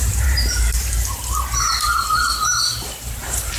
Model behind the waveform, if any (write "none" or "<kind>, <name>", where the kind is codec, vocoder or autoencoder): vocoder, BigVGAN v2